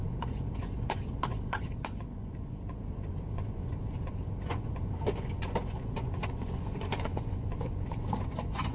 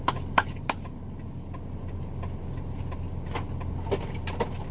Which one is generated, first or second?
first